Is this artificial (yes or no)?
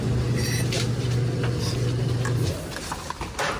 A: no